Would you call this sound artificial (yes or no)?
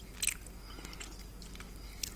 no